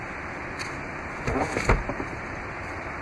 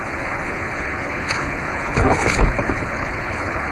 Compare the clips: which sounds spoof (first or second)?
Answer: second